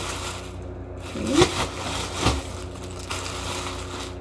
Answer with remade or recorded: recorded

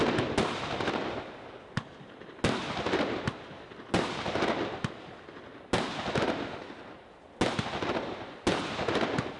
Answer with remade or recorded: recorded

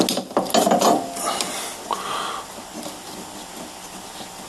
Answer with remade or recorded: recorded